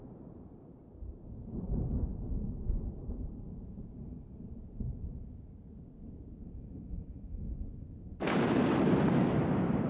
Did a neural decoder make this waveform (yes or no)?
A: yes